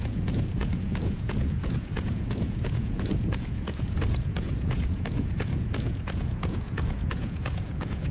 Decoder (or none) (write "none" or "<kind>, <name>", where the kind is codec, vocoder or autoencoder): vocoder, Vocos